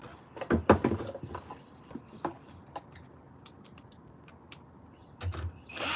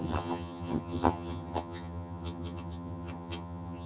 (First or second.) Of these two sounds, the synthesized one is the second